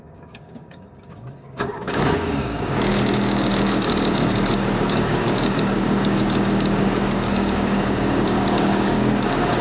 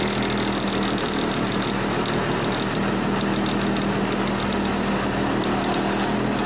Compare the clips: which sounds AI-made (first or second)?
first